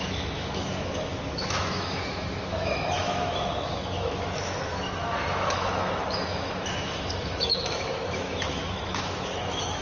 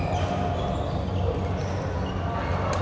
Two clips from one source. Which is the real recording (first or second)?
second